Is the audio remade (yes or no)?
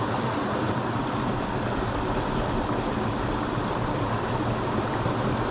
no